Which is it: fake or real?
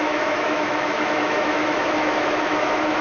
fake